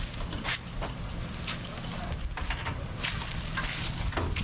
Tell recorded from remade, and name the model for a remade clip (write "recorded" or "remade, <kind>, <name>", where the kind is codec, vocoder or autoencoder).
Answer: recorded